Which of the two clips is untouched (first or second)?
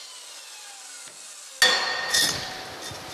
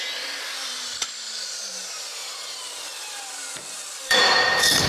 first